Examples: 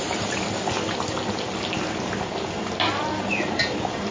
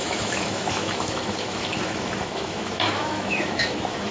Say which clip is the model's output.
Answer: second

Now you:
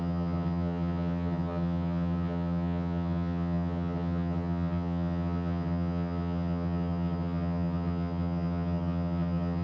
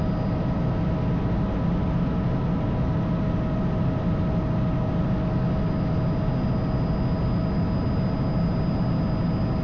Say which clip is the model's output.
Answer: first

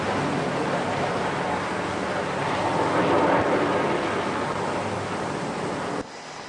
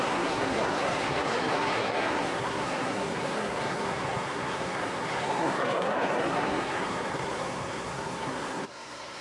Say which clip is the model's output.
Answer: second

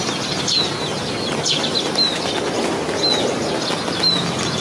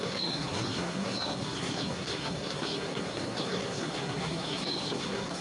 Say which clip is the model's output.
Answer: second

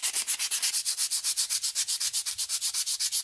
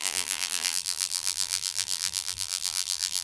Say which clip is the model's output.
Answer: second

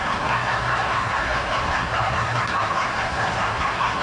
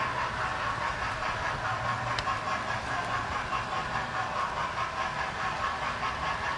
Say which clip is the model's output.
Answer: first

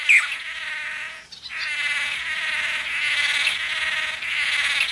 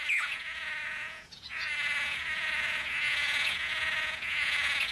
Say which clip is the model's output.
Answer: second